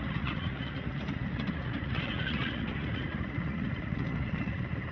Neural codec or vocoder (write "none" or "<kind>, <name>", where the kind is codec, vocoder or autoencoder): vocoder, Vocos